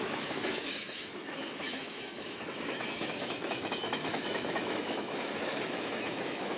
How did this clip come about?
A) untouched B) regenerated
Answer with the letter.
B